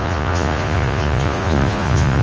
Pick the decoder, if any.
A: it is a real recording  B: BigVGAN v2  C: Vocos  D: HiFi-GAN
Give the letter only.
C